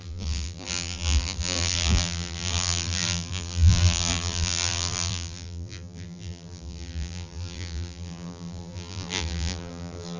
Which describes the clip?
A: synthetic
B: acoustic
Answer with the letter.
A